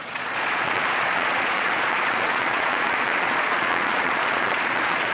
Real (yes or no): no